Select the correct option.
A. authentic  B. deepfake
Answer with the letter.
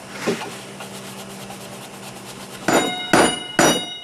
A